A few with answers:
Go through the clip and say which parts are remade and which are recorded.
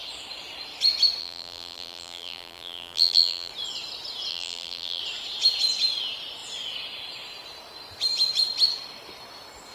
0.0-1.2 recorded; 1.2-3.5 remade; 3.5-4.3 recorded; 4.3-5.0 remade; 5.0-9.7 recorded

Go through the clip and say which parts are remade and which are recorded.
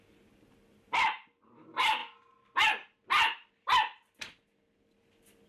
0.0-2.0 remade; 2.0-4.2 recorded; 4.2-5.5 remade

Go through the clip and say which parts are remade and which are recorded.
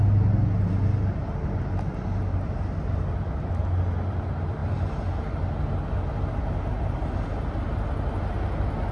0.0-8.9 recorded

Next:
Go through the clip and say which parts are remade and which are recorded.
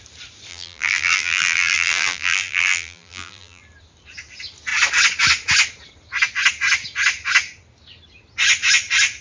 0.0-0.5 recorded; 0.5-3.6 remade; 3.6-9.2 recorded